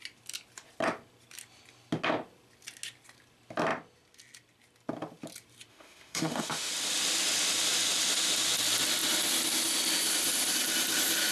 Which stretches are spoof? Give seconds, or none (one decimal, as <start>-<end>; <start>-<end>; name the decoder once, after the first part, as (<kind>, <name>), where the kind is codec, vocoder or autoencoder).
5.7-6.7 (autoencoder, DAC-VAE)